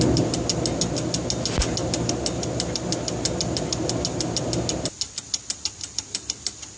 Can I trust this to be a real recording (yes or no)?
yes